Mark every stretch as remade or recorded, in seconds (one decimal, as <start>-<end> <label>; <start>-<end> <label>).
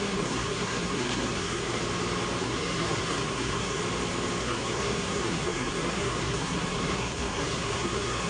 0.0-1.8 remade; 1.8-2.4 recorded; 2.4-3.8 remade; 3.8-4.4 recorded; 4.4-8.3 remade